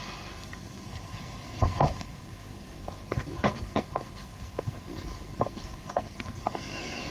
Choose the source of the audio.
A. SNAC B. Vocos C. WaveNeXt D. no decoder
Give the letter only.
A